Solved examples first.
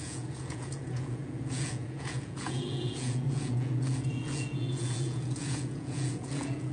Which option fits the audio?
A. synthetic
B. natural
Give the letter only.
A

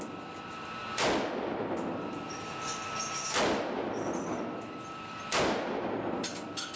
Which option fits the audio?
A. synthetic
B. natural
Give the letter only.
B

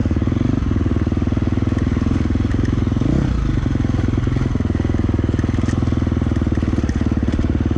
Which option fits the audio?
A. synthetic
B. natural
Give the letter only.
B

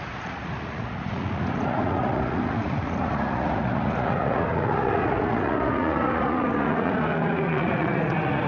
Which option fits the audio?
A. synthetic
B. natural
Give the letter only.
A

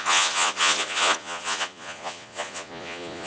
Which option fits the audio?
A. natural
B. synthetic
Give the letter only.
B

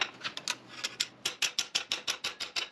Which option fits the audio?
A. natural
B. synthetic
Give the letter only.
A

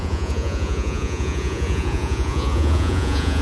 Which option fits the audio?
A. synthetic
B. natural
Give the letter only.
A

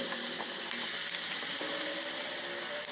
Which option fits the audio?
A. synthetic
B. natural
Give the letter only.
B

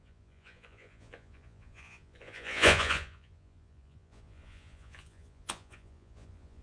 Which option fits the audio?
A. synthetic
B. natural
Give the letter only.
A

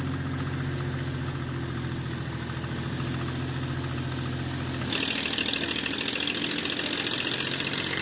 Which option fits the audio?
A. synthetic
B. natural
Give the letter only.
B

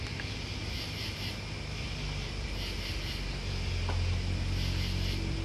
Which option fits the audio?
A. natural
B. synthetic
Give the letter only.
A